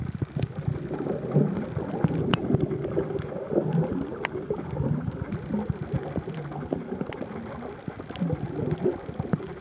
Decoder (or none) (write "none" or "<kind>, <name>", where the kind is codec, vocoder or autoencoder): none